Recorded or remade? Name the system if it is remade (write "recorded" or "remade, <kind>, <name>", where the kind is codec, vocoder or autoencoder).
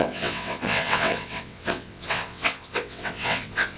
remade, vocoder, WaveNeXt